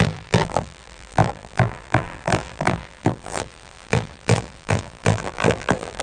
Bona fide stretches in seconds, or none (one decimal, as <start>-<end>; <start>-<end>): none